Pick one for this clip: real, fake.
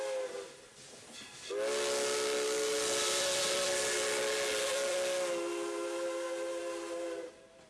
real